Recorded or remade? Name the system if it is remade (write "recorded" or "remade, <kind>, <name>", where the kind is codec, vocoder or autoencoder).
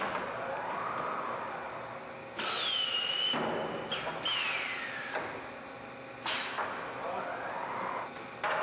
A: recorded